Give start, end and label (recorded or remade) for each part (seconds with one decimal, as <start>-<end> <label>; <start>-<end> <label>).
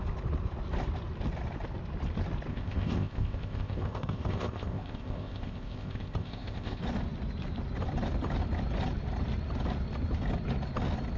0.0-2.5 recorded; 2.5-6.8 remade; 6.8-11.2 recorded